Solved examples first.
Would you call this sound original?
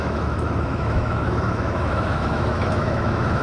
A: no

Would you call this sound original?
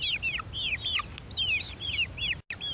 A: yes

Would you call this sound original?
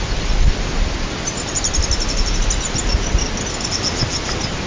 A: yes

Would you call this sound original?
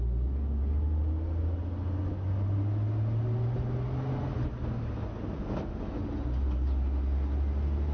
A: yes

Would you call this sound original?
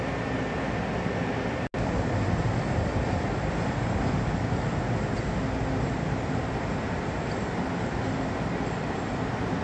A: yes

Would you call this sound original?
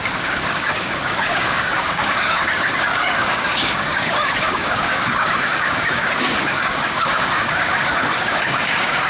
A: no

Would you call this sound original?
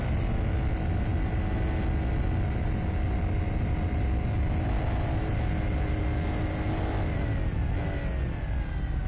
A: yes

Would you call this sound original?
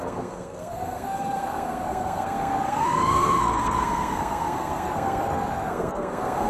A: no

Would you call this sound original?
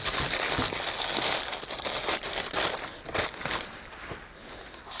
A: yes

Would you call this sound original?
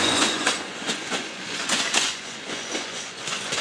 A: no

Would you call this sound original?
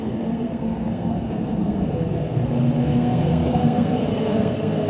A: no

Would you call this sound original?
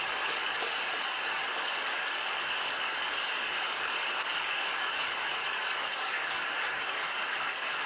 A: no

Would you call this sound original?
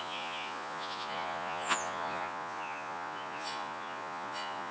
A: no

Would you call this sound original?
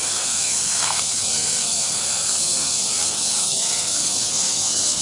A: no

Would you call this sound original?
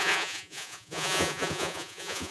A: no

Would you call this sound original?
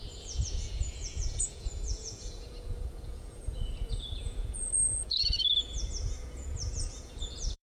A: no